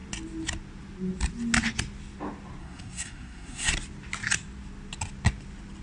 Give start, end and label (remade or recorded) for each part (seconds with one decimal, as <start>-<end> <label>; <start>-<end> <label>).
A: 0.0-2.6 recorded; 2.6-3.7 remade; 3.7-5.8 recorded

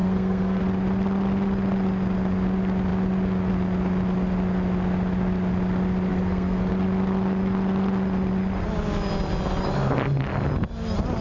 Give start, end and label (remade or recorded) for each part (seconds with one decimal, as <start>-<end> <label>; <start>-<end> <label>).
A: 0.0-0.6 remade; 0.6-6.1 recorded; 6.1-6.7 remade; 6.7-11.2 recorded

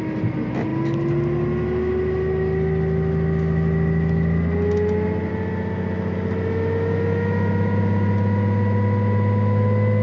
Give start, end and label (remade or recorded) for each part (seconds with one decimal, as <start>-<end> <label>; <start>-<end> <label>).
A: 0.0-10.0 recorded

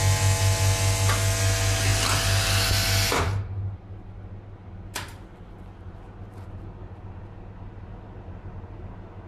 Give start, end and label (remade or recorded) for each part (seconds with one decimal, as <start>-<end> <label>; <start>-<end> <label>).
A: 0.0-9.3 recorded

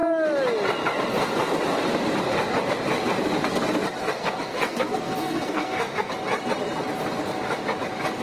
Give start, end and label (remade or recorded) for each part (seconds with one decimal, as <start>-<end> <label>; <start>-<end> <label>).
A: 0.0-4.0 recorded; 4.0-6.1 remade; 6.1-8.2 recorded

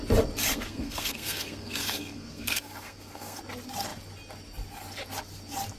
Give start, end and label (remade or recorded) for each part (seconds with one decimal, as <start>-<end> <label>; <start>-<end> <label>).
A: 0.0-0.5 recorded; 0.5-3.4 remade; 3.4-5.8 recorded

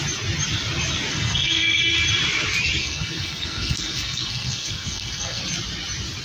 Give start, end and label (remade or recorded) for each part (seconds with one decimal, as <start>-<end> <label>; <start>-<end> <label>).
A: 0.0-1.1 recorded; 1.1-1.8 remade; 1.8-2.8 recorded; 2.8-5.4 remade; 5.4-6.2 recorded

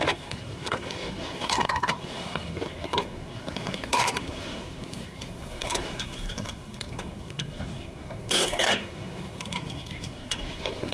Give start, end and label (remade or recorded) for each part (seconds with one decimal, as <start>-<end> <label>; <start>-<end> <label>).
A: 0.0-10.9 remade